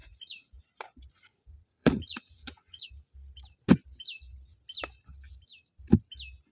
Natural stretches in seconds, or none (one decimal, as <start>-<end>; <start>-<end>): 0.6-1.3; 2.9-6.5